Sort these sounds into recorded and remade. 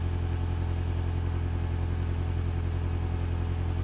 recorded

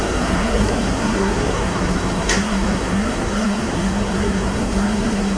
remade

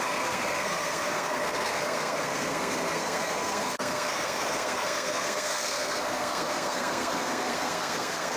remade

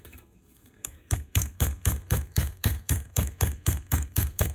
remade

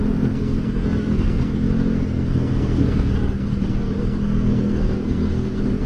remade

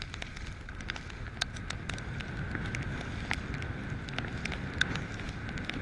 recorded